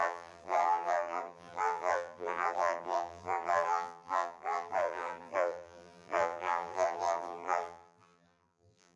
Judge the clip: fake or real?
fake